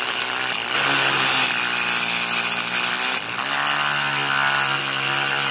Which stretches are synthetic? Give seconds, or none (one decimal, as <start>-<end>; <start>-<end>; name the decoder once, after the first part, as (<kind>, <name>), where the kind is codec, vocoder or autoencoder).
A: none